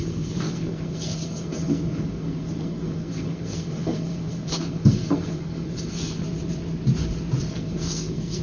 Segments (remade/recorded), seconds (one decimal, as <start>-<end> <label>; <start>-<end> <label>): 0.0-6.2 remade; 6.2-7.5 recorded; 7.5-8.4 remade